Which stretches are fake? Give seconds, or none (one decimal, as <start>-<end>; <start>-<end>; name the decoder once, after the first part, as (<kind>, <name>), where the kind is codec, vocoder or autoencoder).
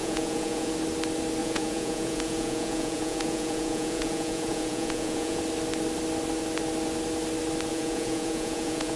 0.0-0.7 (vocoder, Vocos); 1.4-5.4; 7.7-9.0